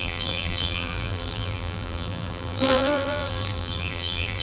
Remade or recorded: remade